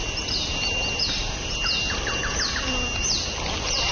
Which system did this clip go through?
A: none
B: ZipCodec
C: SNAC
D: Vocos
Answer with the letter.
A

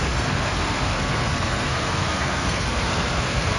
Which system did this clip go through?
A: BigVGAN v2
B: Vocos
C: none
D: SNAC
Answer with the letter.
D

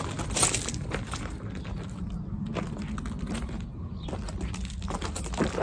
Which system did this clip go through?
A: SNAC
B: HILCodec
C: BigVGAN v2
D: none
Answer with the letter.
D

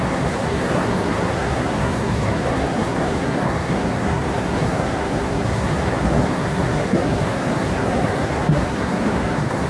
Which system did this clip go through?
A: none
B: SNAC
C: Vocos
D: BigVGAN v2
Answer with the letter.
B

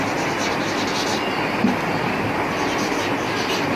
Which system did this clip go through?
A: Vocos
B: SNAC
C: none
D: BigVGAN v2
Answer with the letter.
C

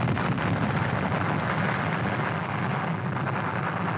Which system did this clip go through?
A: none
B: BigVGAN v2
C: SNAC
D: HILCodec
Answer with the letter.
A